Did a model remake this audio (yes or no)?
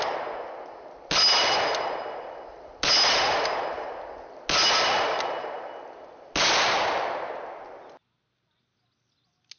no